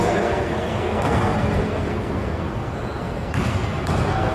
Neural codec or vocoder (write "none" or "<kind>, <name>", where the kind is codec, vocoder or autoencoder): codec, SNAC